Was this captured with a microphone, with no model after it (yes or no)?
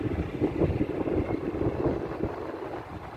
yes